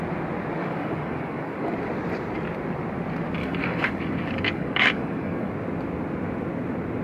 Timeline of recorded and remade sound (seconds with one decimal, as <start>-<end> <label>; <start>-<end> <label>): 0.0-0.6 recorded; 0.6-1.7 remade; 1.7-3.4 recorded; 3.4-5.5 remade; 5.5-7.0 recorded